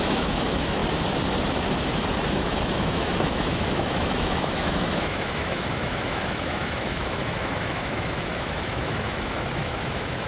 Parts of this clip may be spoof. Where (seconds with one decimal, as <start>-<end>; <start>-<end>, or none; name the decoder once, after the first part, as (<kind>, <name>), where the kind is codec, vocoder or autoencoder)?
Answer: 0.0-0.8 (autoencoder, DAC-VAE); 2.3-10.3